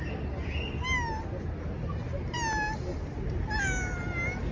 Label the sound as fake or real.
real